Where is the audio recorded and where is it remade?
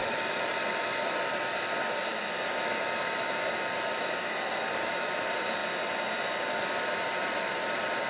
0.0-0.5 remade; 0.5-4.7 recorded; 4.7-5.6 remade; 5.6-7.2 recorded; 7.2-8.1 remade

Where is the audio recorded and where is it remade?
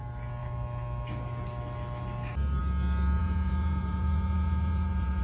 0.0-3.2 recorded; 3.2-5.2 remade